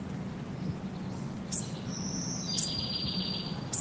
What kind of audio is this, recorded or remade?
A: recorded